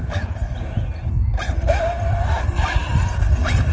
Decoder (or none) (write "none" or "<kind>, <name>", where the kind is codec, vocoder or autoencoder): none